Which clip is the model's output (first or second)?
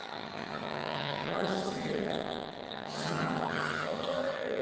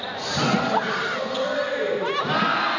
first